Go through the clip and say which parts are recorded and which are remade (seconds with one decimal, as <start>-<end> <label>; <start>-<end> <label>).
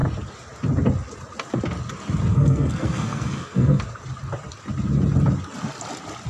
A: 0.0-2.3 recorded; 2.3-3.8 remade; 3.8-6.3 recorded